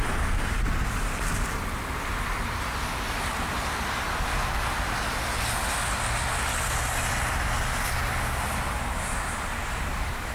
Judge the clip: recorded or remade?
recorded